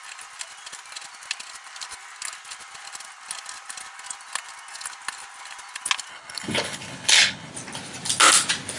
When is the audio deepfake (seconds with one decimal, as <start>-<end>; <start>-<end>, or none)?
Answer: 6.1-7.5